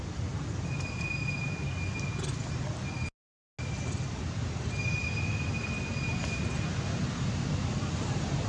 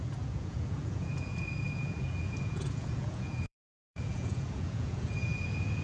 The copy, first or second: second